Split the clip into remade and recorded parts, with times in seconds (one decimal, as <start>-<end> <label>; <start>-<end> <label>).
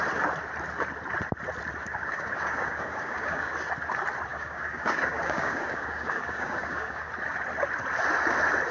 0.0-1.9 recorded; 1.9-3.5 remade; 3.5-4.3 recorded; 4.3-7.1 remade; 7.1-8.7 recorded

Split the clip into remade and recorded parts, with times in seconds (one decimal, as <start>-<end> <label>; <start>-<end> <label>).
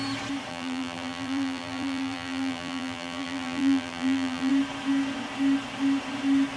0.0-0.5 recorded; 0.5-4.5 remade; 4.5-6.6 recorded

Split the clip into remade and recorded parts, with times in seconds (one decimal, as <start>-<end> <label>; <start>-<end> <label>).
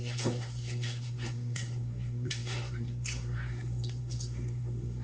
0.0-5.0 remade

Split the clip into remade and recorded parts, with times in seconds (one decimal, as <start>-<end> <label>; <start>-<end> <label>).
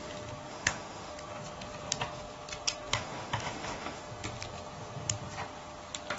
0.0-0.5 recorded; 0.5-1.1 remade; 1.1-2.9 recorded; 2.9-4.0 remade; 4.0-6.2 recorded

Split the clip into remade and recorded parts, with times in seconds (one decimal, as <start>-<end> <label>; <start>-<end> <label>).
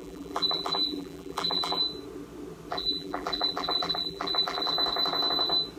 0.0-1.8 remade; 1.8-2.7 recorded; 2.7-4.7 remade; 4.7-5.8 recorded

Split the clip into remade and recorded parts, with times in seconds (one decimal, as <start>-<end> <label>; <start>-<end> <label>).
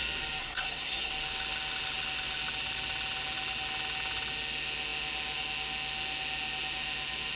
0.0-0.4 recorded; 0.4-1.1 remade; 1.1-7.4 recorded